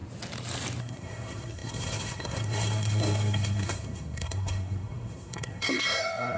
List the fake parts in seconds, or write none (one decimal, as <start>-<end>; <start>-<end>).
0.8-6.4